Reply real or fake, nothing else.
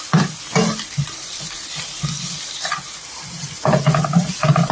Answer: real